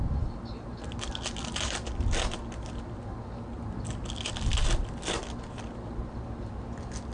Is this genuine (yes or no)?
yes